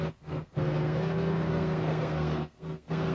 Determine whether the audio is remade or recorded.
remade